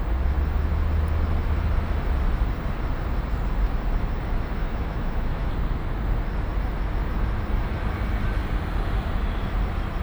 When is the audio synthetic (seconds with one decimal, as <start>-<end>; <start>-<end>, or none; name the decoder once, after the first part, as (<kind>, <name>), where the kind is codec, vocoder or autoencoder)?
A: 4.6-5.5 (autoencoder, DAC-VAE)